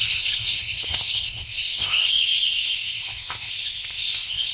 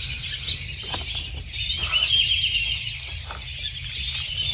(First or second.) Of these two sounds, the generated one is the first